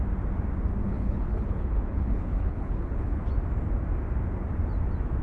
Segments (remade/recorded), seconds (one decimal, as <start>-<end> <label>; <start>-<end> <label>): 0.0-0.8 recorded; 0.8-3.2 remade; 3.2-5.2 recorded